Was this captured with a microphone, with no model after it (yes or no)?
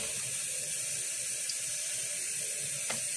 yes